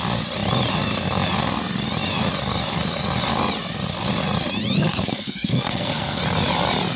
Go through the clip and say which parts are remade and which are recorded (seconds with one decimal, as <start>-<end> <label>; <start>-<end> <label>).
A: 0.0-4.9 recorded; 4.9-6.2 remade; 6.2-7.0 recorded